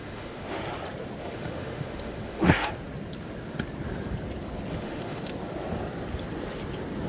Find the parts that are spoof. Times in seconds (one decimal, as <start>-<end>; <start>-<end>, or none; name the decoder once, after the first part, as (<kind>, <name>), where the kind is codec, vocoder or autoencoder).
0.0-0.6 (autoencoder, DAC-VAE); 1.2-2.7; 4.7-5.3